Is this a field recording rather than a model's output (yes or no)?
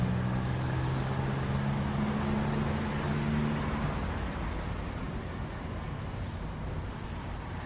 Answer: yes